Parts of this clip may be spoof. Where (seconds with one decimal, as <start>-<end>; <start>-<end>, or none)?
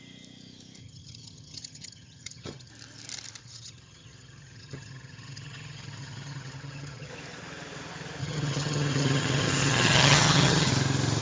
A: 0.8-2.7; 3.4-7.1; 8.2-10.7